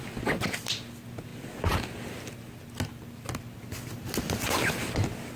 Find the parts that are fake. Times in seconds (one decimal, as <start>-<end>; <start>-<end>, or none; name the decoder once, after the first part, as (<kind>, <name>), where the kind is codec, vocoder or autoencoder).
none